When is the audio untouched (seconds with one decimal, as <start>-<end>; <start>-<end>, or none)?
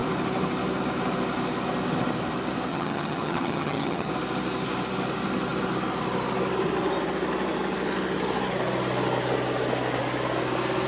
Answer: 0.0-2.7; 4.1-10.9